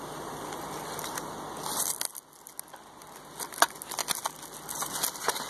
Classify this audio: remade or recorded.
recorded